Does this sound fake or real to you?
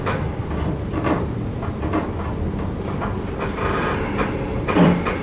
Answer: fake